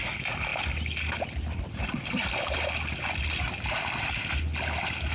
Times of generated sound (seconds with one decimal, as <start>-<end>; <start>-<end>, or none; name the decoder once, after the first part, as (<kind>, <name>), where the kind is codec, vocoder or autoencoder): none